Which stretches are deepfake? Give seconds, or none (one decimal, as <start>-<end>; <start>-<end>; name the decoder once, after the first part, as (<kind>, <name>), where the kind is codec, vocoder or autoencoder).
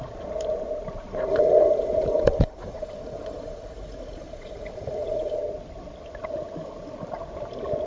1.3-5.4 (vocoder, Vocos)